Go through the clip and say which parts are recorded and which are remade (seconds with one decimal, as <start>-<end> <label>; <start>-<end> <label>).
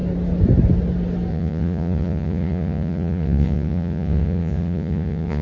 0.0-1.3 recorded; 1.3-5.4 remade